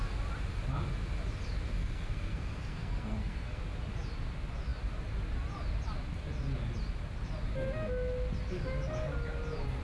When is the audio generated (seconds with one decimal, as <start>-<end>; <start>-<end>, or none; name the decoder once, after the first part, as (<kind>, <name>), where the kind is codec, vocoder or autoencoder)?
1.8-3.6 (codec, SNAC)